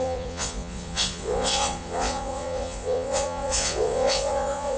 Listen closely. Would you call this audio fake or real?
fake